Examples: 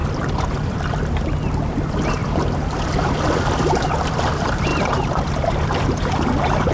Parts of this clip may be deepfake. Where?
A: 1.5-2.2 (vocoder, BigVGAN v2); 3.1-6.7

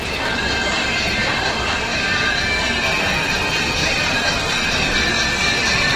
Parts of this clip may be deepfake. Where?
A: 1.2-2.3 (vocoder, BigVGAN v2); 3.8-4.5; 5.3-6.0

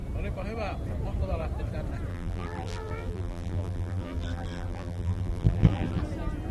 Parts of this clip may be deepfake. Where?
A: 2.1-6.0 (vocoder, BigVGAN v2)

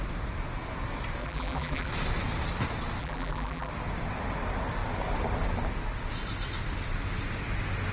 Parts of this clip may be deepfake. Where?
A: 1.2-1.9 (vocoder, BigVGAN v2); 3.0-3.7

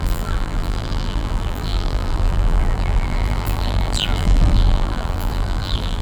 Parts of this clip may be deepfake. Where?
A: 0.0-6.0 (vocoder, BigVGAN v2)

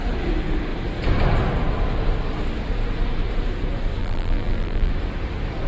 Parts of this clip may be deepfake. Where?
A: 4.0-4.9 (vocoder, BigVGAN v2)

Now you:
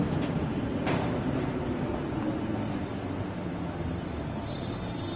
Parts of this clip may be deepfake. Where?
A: 0.0-2.9 (vocoder, BigVGAN v2); 3.9-5.2